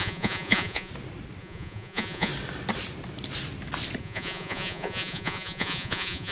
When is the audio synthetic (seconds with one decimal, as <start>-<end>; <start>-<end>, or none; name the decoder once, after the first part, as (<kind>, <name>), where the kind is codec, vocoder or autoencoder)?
0.0-0.9 (vocoder, Vocos); 1.4-2.3; 4.0-6.3